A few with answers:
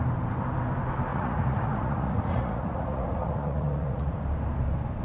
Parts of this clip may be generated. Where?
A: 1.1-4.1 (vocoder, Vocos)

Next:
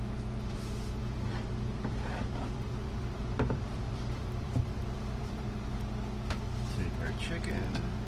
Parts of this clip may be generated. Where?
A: 1.0-5.5 (vocoder, BigVGAN v2)

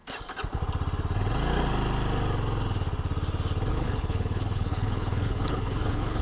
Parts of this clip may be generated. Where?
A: 3.7-6.2 (codec, HILCodec)

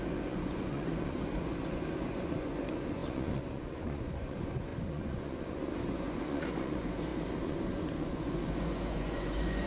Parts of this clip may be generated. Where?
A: 0.0-9.7 (vocoder, Vocos)

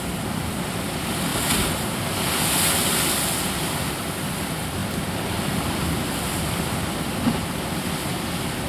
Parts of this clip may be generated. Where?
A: none